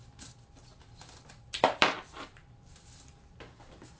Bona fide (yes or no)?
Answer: no